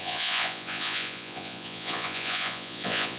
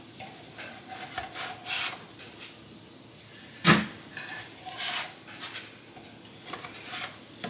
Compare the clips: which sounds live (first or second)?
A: second